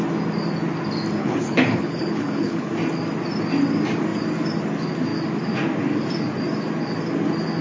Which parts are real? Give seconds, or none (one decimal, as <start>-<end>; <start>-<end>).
0.0-1.2; 2.7-7.6